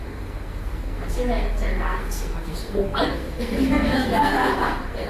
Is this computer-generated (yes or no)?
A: yes